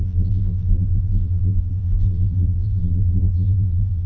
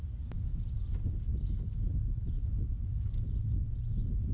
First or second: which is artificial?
first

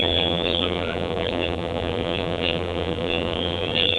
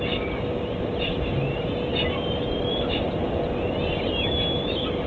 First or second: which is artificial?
first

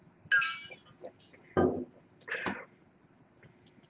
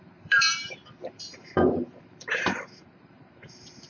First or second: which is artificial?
second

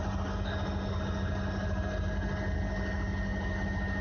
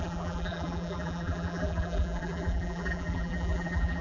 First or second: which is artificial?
second